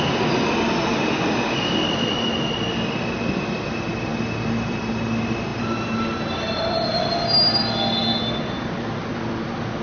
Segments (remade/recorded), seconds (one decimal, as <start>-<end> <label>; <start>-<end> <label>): 0.0-9.8 recorded